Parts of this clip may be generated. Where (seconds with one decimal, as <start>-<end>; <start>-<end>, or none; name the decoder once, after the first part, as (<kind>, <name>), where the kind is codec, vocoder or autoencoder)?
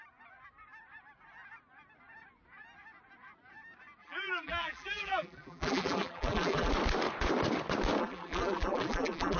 4.0-6.7 (vocoder, BigVGAN v2); 8.0-9.4